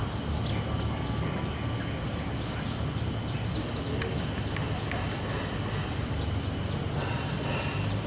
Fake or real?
real